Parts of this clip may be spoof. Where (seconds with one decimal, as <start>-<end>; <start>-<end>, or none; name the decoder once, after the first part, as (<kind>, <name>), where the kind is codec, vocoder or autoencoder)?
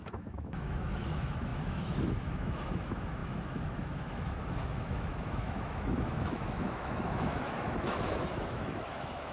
0.0-9.3 (autoencoder, DAC-VAE)